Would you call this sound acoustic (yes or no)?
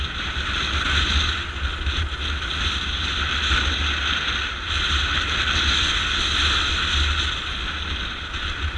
yes